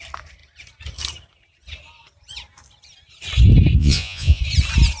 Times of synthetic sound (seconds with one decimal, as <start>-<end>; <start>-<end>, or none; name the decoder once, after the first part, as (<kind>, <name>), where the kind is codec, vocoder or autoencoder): 3.8-4.4 (vocoder, Vocos)